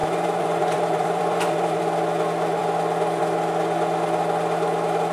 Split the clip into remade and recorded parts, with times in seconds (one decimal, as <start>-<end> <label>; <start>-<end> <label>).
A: 0.0-1.8 remade; 1.8-5.1 recorded